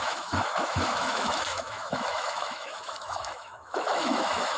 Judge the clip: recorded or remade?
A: remade